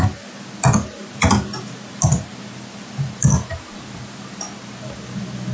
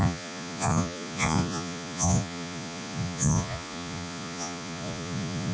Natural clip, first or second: first